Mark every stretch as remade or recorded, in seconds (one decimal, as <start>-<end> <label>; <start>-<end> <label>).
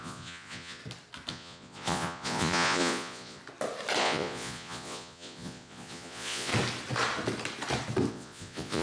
0.0-0.8 remade; 0.8-1.3 recorded; 1.3-3.4 remade; 3.4-4.0 recorded; 4.0-6.5 remade; 6.5-8.1 recorded; 8.1-8.8 remade